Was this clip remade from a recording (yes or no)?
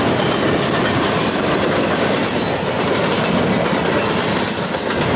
no